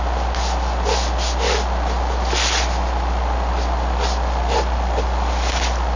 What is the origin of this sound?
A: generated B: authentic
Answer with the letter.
B